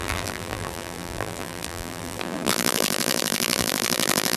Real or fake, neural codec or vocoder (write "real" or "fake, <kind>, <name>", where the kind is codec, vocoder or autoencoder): fake, vocoder, BigVGAN v2